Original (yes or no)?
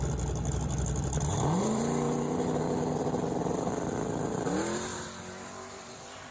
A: no